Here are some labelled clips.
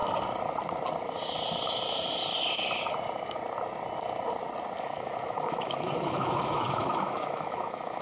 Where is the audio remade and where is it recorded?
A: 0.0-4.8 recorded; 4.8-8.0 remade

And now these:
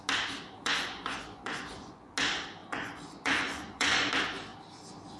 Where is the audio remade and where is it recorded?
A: 0.0-0.6 recorded; 0.6-2.1 remade; 2.1-2.6 recorded; 2.6-4.1 remade; 4.1-5.2 recorded

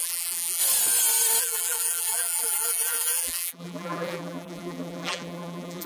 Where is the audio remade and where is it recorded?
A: 0.0-0.6 remade; 0.6-1.4 recorded; 1.4-5.9 remade

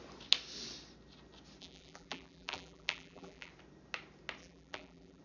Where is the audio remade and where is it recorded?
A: 0.0-1.6 recorded; 1.6-3.5 remade; 3.5-4.4 recorded; 4.4-5.2 remade

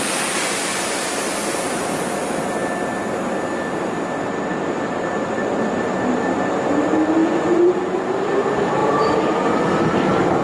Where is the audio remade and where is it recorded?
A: 0.0-0.4 recorded; 0.4-1.0 remade; 1.0-7.2 recorded; 7.2-8.1 remade; 8.1-10.4 recorded

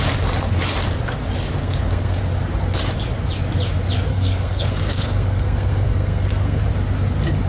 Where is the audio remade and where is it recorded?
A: 0.0-1.6 recorded; 1.6-2.2 remade; 2.2-4.1 recorded; 4.1-6.6 remade; 6.6-7.5 recorded

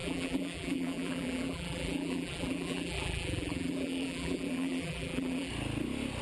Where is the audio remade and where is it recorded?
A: 0.0-5.5 remade; 5.5-6.2 recorded